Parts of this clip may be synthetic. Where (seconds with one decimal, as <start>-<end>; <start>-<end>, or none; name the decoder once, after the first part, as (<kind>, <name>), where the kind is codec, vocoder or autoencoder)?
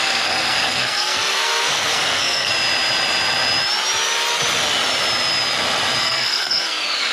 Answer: 0.0-2.5 (codec, SNAC); 6.0-7.1